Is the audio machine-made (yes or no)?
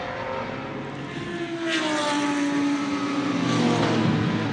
no